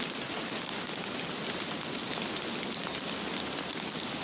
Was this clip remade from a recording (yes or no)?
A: no